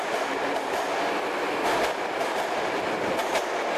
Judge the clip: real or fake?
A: real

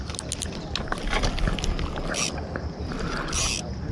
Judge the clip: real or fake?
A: real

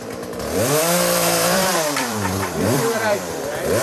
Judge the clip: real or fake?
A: fake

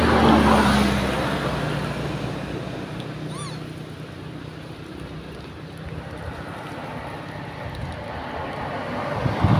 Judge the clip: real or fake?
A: real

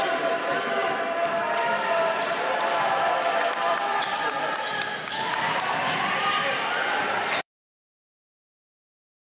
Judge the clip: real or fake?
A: fake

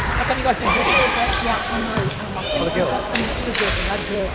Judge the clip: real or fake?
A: fake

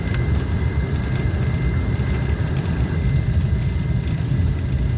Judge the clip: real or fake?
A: fake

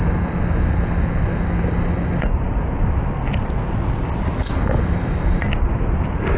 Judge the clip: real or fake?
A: real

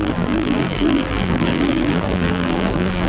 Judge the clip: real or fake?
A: fake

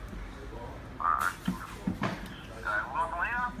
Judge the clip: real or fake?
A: real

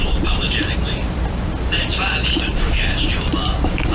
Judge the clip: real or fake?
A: fake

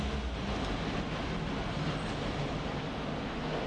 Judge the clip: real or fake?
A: real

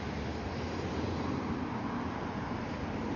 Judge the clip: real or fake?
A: real